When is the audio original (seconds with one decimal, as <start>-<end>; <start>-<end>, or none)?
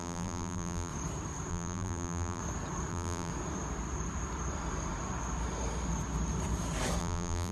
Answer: 0.9-1.5; 2.4-2.9; 3.3-7.0